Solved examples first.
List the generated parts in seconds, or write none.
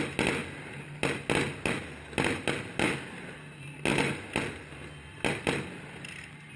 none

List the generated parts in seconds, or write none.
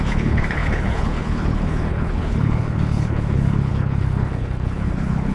0.0-5.3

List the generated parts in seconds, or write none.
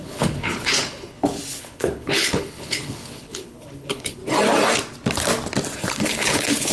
0.0-4.2; 5.8-6.7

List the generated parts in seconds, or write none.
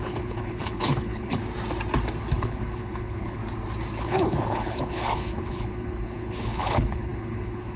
0.0-1.4; 2.4-3.4; 4.0-7.8